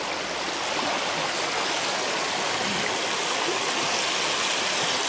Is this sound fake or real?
real